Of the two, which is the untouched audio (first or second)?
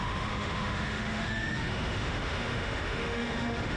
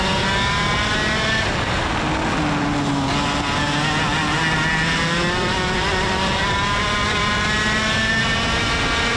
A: second